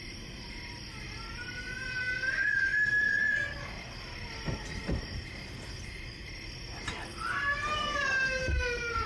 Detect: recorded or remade recorded